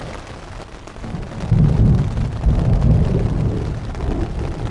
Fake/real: real